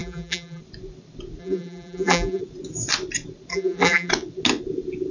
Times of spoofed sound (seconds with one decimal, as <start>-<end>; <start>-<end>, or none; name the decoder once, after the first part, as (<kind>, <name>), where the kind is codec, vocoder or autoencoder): 0.0-0.6 (vocoder, BigVGAN v2); 1.4-2.4; 3.5-4.1